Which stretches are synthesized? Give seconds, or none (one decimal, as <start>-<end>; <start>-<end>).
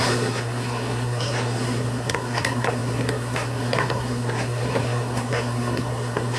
0.0-6.4